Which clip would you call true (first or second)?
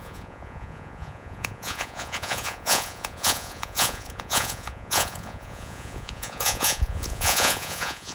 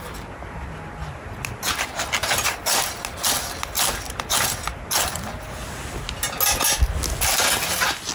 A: second